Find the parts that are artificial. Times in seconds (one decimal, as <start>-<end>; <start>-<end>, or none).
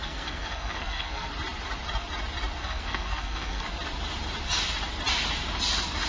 0.0-1.3; 2.6-3.7